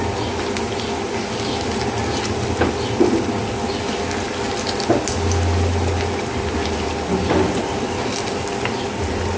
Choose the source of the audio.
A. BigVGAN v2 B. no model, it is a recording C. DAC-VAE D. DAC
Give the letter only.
B